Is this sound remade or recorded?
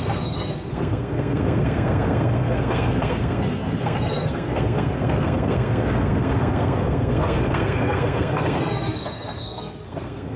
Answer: remade